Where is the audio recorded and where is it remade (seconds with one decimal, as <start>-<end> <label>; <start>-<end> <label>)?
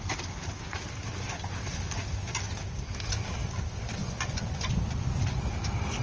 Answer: 0.0-4.0 recorded; 4.0-4.7 remade; 4.7-6.0 recorded